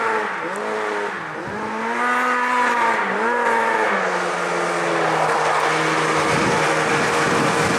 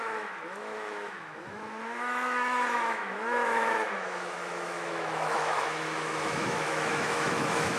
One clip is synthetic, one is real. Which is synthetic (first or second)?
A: second